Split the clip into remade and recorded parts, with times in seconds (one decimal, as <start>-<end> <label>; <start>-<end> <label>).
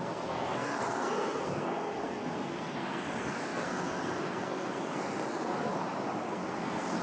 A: 0.0-5.7 remade; 5.7-6.3 recorded; 6.3-7.0 remade